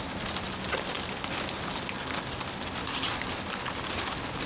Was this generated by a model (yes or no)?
no